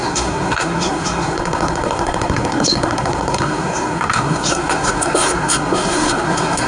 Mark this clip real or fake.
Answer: fake